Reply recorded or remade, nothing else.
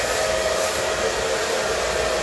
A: recorded